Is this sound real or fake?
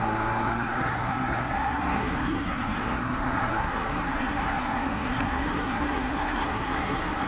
fake